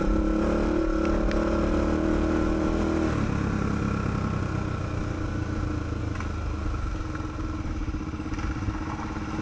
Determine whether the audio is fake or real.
real